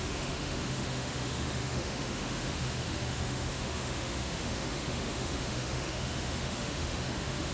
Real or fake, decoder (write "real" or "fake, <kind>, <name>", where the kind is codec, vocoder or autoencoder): fake, autoencoder, DAC-VAE